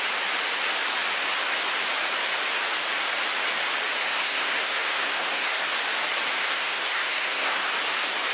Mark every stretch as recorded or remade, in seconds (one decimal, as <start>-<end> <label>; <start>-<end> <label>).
0.0-4.0 recorded; 4.0-5.6 remade; 5.6-6.4 recorded; 6.4-7.7 remade; 7.7-8.3 recorded